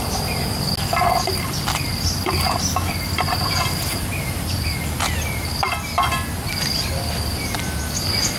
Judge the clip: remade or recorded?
recorded